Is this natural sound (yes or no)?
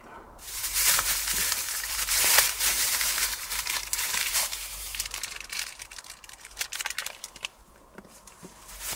no